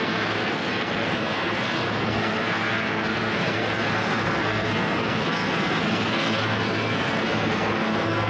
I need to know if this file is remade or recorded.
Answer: remade